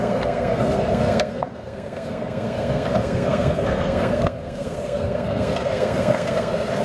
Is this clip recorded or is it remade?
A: remade